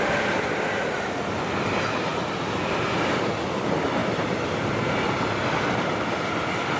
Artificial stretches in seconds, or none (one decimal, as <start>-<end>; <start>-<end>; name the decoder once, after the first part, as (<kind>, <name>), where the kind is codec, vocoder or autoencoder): 4.0-4.9 (vocoder, BigVGAN v2)